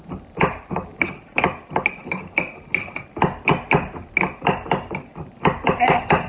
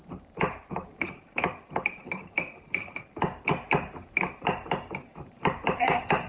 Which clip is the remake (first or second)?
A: second